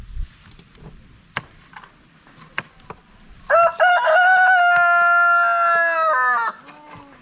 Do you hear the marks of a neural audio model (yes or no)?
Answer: no